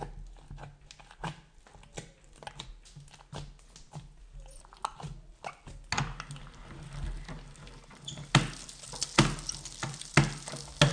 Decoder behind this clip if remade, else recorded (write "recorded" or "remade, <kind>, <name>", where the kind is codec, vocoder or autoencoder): recorded